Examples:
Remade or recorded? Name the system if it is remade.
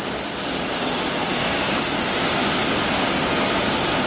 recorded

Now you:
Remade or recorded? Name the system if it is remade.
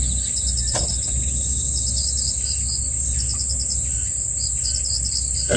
recorded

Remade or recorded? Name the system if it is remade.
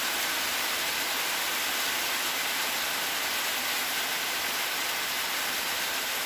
recorded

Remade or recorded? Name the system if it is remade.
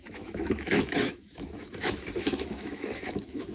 remade, autoencoder, DAC-VAE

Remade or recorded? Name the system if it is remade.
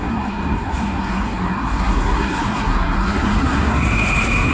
remade, codec, SNAC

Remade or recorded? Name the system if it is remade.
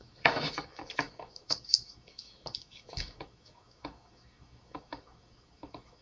remade, autoencoder, DAC-VAE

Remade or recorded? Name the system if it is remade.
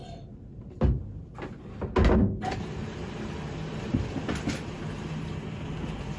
recorded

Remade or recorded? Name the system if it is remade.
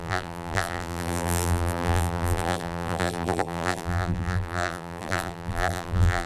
remade, vocoder, BigVGAN v2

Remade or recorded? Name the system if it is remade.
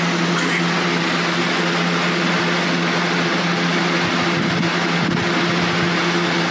recorded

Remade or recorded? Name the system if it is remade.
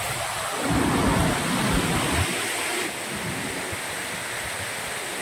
recorded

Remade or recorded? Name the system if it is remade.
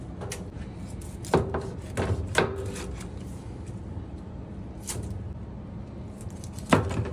recorded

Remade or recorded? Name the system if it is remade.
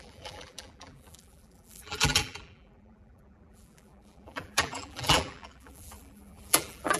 remade, vocoder, BigVGAN v2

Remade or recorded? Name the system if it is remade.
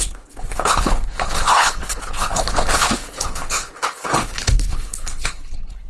remade, codec, HILCodec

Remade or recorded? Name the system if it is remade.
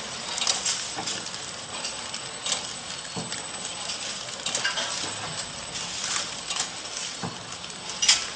recorded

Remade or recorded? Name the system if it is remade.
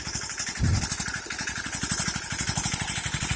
recorded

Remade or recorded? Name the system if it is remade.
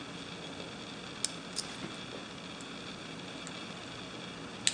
recorded